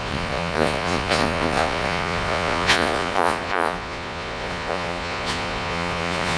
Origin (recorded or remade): remade